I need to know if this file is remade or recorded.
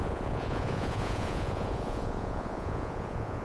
remade